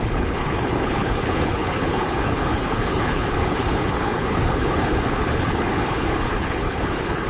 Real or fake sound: fake